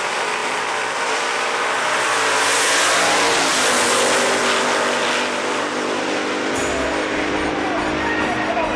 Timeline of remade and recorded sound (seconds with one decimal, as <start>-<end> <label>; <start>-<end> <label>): 0.0-8.8 recorded